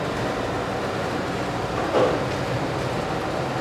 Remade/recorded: recorded